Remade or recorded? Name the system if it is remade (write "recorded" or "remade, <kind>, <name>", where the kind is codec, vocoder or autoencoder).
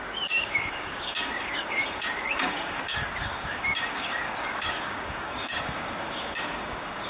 remade, codec, DAC